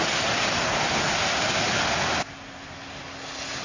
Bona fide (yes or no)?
yes